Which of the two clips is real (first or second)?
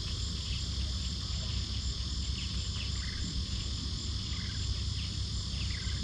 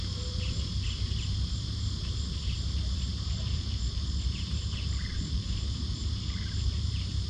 first